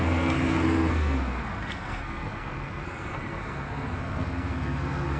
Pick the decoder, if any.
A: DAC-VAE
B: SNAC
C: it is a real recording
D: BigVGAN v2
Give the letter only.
B